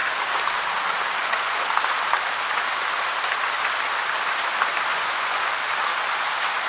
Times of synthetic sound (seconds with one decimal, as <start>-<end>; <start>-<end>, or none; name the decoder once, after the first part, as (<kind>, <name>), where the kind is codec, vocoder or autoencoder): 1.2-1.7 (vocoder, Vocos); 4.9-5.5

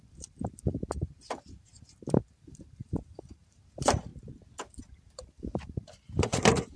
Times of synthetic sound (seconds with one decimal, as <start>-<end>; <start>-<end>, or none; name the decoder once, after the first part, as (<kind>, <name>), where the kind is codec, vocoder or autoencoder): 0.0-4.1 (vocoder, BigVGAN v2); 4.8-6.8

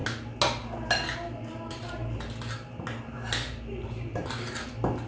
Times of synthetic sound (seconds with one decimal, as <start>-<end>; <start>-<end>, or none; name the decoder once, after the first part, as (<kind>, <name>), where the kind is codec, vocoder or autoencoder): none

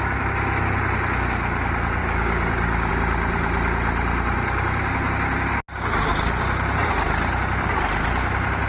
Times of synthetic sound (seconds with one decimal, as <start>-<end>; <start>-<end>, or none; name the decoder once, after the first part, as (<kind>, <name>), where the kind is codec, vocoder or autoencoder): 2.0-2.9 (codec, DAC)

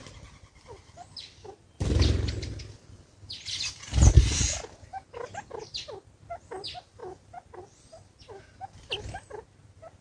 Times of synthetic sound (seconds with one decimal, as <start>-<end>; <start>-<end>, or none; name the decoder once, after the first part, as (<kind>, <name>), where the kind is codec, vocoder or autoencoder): none

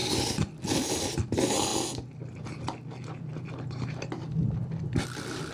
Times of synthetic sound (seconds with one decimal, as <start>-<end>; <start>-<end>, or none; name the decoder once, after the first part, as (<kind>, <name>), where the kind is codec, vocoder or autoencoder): 0.0-0.9 (vocoder, BigVGAN v2); 1.7-5.0

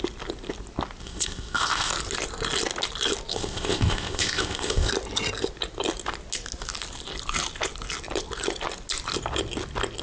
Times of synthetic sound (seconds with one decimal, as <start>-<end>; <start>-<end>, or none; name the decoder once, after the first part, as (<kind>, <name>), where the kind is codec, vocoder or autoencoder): 1.0-1.9 (codec, ZipCodec); 3.3-4.9

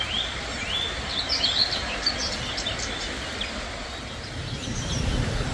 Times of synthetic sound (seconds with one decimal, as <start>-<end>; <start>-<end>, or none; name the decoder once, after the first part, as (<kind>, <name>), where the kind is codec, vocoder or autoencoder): none